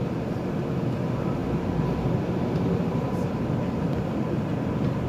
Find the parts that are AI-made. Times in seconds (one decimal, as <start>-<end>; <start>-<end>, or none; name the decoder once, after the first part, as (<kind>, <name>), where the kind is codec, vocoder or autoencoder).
0.0-0.6 (vocoder, BigVGAN v2); 1.4-4.5

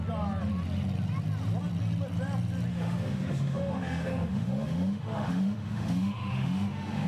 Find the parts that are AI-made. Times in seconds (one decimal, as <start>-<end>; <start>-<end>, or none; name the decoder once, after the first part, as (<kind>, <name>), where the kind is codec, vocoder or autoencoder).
2.7-7.1 (autoencoder, DAC-VAE)

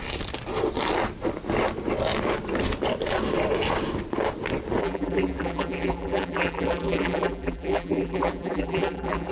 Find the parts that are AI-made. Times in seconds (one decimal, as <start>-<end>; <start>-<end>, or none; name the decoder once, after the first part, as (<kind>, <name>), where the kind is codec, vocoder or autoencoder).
4.8-9.3 (vocoder, BigVGAN v2)

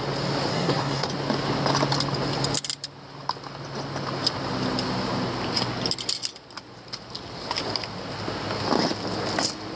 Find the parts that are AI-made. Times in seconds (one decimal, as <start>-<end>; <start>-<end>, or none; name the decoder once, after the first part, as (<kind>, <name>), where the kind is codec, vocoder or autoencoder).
0.5-1.1 (codec, SNAC)

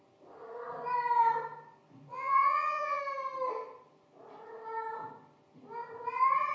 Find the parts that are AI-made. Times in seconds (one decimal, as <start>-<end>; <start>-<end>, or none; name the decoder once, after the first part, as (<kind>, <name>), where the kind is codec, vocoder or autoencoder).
2.1-3.0 (vocoder, Vocos)

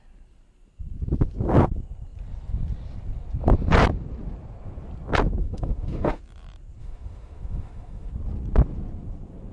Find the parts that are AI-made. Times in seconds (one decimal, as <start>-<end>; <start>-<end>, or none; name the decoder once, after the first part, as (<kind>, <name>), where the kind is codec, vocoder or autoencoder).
5.4-6.2 (autoencoder, DAC-VAE); 6.8-8.1

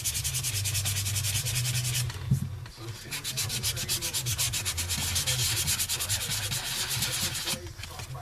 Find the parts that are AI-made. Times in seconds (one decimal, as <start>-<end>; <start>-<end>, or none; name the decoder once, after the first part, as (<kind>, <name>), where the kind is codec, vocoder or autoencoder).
none

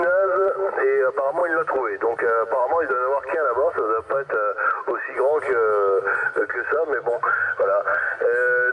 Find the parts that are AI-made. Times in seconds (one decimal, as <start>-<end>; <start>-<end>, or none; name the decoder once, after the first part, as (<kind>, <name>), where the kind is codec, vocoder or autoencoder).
none